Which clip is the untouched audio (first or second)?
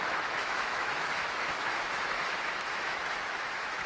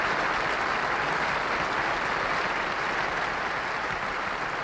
second